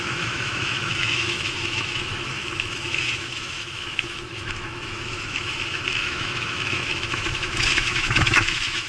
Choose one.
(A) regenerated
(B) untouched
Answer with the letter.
A